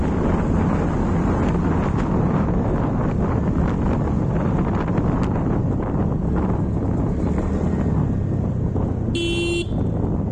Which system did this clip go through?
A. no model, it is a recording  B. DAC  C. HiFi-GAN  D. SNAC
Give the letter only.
A